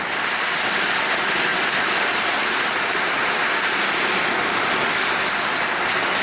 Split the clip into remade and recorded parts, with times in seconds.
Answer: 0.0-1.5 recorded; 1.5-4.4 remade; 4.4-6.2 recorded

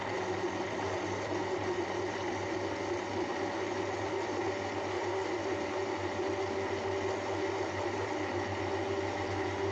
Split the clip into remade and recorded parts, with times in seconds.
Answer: 0.0-9.7 recorded

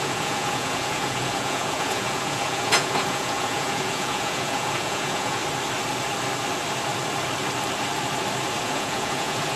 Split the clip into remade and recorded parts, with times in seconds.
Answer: 0.0-5.4 remade; 5.4-8.6 recorded; 8.6-9.6 remade

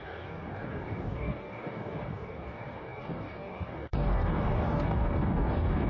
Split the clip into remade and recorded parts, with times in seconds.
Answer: 0.0-5.9 remade

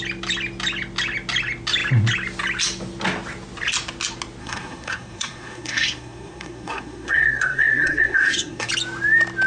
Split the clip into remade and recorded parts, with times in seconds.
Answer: 0.0-4.4 recorded; 4.4-8.7 remade; 8.7-9.5 recorded

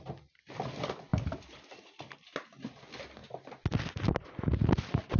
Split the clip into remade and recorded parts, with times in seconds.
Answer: 0.0-5.2 recorded